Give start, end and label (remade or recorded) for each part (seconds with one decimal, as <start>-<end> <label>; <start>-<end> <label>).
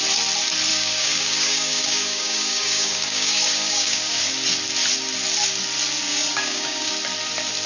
0.0-0.7 recorded; 0.7-4.3 remade; 4.3-6.1 recorded; 6.1-6.9 remade; 6.9-7.7 recorded